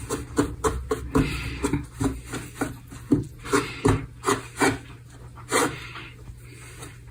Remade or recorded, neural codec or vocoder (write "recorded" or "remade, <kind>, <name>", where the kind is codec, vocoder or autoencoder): recorded